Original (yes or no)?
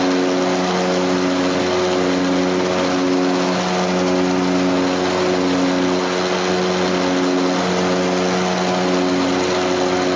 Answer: yes